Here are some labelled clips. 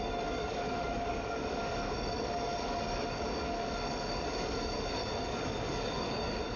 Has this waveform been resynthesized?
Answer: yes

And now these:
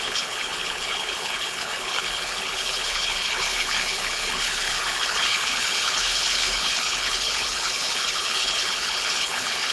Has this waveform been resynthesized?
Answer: yes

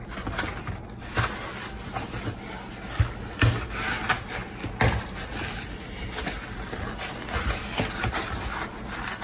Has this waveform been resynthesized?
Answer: no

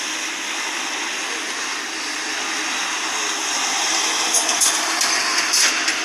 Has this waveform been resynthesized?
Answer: no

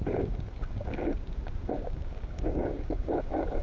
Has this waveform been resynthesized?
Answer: yes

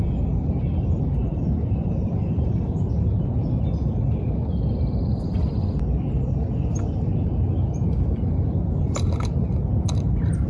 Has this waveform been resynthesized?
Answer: no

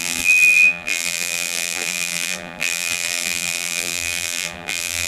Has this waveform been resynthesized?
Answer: yes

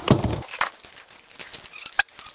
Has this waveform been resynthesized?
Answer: no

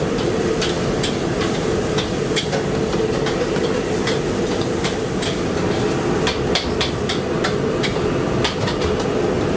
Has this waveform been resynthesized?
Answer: no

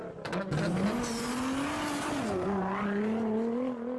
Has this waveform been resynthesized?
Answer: no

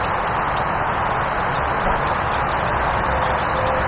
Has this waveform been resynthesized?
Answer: no